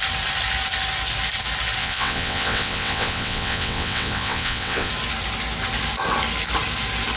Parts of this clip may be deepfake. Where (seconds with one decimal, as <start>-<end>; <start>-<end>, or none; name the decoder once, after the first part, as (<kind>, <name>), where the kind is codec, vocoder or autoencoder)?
1.8-4.9 (vocoder, WaveNeXt)